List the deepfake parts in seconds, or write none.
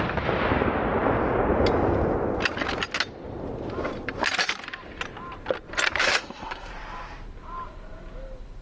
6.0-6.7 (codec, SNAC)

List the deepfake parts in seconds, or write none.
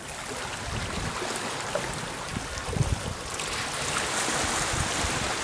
none